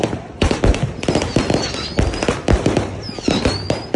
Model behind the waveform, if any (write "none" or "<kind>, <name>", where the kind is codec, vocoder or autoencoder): vocoder, BigVGAN v2